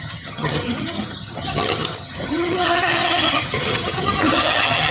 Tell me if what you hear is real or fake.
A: fake